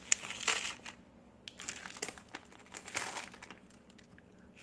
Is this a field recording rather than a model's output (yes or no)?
yes